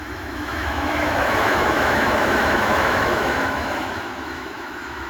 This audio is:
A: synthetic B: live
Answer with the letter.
A